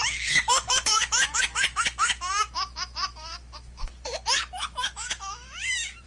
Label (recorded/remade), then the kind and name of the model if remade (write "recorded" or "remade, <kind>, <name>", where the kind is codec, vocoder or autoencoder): remade, autoencoder, DAC-VAE